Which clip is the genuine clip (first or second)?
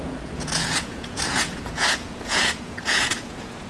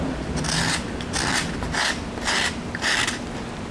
second